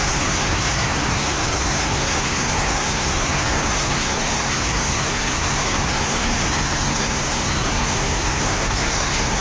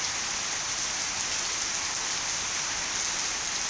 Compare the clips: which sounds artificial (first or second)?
first